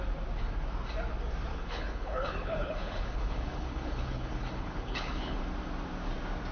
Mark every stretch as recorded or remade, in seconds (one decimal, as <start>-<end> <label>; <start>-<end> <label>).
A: 0.0-1.5 recorded; 1.5-5.4 remade; 5.4-6.5 recorded

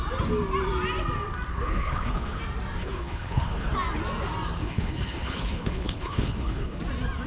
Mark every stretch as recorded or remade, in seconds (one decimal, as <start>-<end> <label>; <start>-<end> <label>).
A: 0.0-1.5 recorded; 1.5-2.4 remade; 2.4-2.8 recorded; 2.8-3.7 remade; 3.7-4.6 recorded; 4.6-6.8 remade; 6.8-7.3 recorded

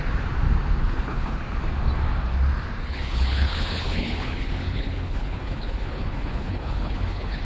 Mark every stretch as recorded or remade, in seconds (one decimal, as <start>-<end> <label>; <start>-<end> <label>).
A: 0.0-0.8 recorded; 0.8-1.4 remade; 1.4-2.8 recorded; 2.8-7.4 remade

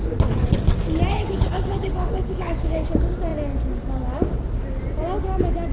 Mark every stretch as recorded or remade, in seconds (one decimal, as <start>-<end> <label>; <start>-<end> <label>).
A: 0.0-1.1 recorded; 1.1-2.9 remade; 2.9-5.7 recorded